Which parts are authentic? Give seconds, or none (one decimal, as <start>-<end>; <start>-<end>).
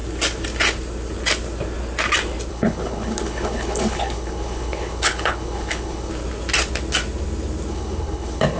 0.0-2.5; 6.1-7.7